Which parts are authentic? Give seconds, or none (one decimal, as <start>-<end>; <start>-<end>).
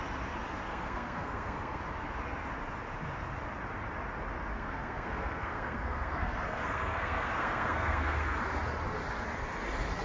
0.0-0.7; 1.8-4.5; 8.4-10.0